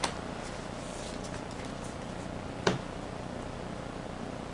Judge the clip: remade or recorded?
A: recorded